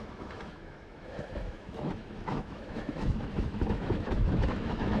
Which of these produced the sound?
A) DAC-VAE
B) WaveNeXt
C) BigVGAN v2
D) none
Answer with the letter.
A